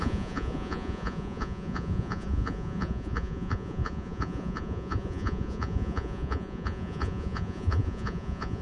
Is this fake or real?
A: fake